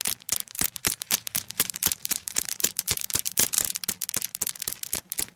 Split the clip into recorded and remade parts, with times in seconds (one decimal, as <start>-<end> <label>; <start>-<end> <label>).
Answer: 0.0-0.4 recorded; 0.4-3.6 remade; 3.6-5.4 recorded